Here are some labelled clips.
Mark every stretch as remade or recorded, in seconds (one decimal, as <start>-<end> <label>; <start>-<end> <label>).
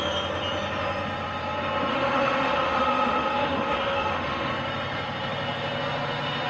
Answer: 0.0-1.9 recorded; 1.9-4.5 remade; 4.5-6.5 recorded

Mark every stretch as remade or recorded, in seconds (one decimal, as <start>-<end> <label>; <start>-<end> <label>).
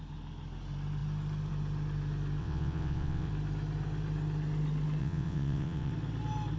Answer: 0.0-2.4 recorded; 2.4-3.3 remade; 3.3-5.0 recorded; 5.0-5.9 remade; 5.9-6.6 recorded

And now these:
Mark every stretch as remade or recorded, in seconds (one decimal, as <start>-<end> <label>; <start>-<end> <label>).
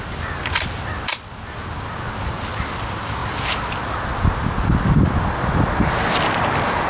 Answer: 0.0-6.9 recorded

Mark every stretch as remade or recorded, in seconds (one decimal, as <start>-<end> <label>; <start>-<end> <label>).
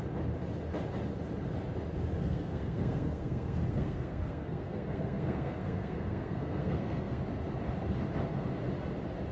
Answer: 0.0-2.2 recorded; 2.2-7.2 remade; 7.2-9.3 recorded